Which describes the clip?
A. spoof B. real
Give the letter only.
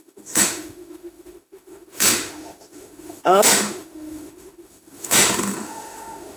A